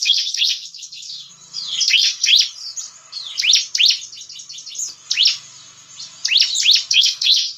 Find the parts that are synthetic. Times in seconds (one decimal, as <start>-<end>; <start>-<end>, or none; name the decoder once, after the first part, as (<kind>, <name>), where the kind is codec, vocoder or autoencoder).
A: 0.0-1.3 (codec, SNAC); 1.9-2.3; 6.9-7.6